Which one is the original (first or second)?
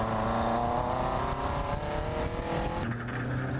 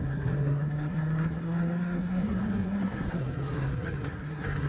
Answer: first